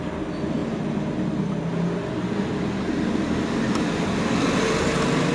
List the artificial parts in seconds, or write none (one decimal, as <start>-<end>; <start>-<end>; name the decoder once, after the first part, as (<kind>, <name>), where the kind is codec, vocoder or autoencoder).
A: none